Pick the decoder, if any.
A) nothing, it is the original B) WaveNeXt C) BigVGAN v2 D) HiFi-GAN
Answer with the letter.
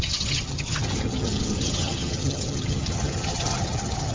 D